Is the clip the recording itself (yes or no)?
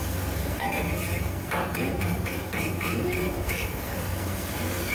no